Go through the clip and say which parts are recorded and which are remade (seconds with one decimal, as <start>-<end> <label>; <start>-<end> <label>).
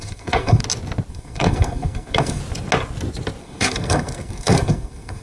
0.0-0.6 remade; 0.6-1.1 recorded; 1.1-2.4 remade; 2.4-3.4 recorded; 3.4-5.2 remade